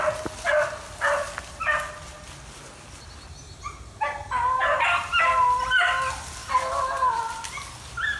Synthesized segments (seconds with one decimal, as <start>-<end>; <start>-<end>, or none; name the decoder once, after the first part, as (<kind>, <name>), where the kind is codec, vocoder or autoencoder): none